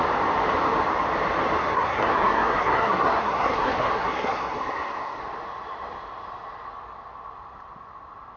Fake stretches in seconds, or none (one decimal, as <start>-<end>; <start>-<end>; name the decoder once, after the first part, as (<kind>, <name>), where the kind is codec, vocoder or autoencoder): 1.6-5.2 (codec, SNAC)